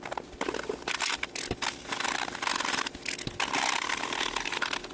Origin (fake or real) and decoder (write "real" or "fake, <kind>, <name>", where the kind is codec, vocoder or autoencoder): real